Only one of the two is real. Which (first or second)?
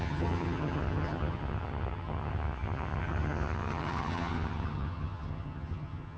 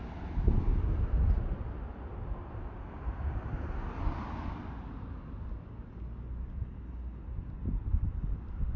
second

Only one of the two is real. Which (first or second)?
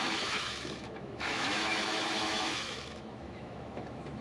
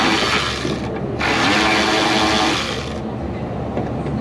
second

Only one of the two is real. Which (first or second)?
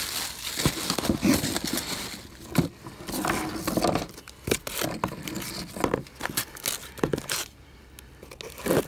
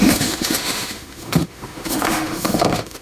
first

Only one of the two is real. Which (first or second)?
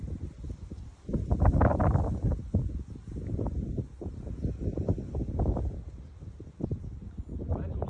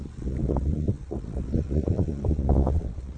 first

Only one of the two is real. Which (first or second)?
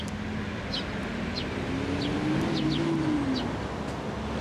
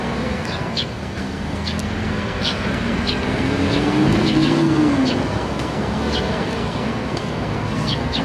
first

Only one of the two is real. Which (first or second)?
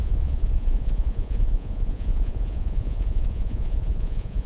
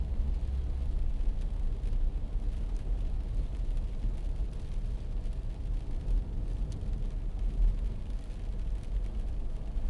second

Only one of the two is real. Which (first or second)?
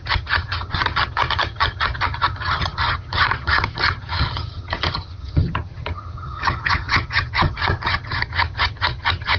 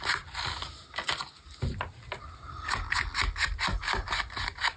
second